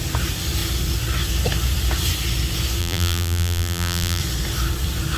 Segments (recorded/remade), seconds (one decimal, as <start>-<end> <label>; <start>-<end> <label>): 0.0-2.8 recorded; 2.8-4.2 remade; 4.2-5.2 recorded